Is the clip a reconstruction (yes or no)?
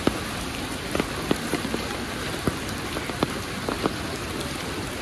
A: no